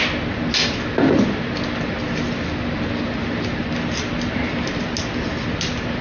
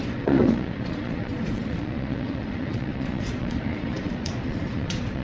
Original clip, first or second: first